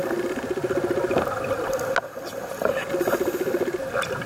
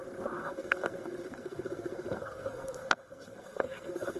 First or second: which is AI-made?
second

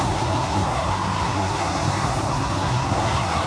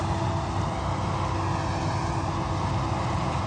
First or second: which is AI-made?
first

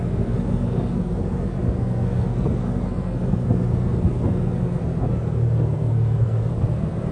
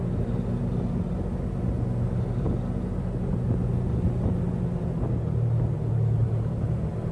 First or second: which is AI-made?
first